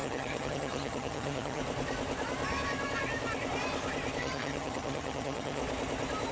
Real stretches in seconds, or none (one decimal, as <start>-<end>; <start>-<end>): 1.6-4.2; 5.6-6.3